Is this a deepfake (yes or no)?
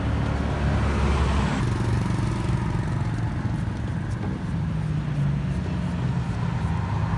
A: no